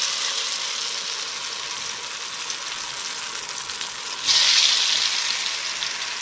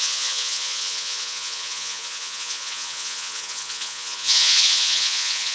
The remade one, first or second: second